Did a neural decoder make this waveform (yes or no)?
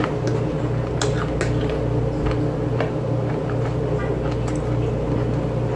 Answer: no